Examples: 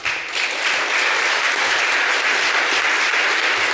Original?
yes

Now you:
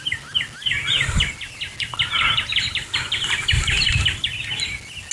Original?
yes